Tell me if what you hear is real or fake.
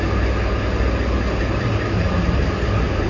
real